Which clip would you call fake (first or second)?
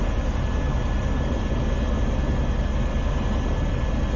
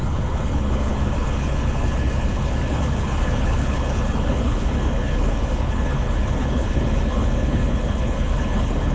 second